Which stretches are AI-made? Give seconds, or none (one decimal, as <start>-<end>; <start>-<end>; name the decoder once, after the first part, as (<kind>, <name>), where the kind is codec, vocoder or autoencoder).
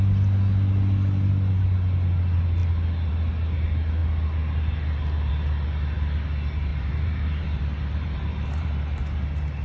6.7-8.7 (vocoder, BigVGAN v2)